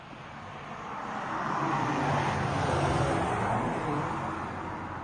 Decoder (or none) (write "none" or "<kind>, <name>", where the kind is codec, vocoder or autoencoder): none